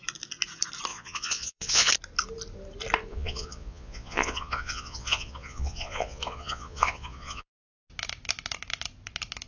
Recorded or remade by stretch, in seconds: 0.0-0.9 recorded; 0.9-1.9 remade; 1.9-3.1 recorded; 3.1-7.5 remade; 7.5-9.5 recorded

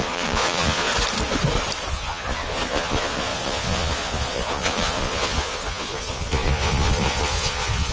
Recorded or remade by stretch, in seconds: 0.0-0.9 remade; 0.9-1.9 recorded; 1.9-7.9 remade

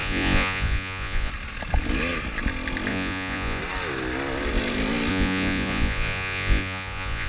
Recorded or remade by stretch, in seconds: 0.0-1.3 remade; 1.3-2.9 recorded; 2.9-3.6 remade; 3.6-5.1 recorded; 5.1-7.3 remade

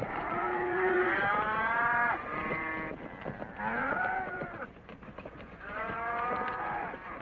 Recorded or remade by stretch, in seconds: 0.0-2.7 remade; 2.7-3.8 recorded; 3.8-7.2 remade

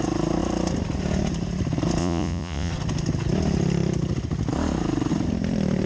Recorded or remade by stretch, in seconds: 0.0-2.0 recorded; 2.0-2.7 remade; 2.7-5.9 recorded

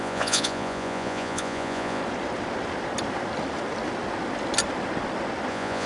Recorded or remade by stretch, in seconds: 0.0-2.0 remade; 2.0-5.5 recorded; 5.5-5.9 remade

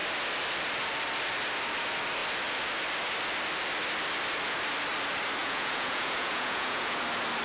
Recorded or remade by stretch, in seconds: 0.0-5.4 recorded; 5.4-7.0 remade; 7.0-7.4 recorded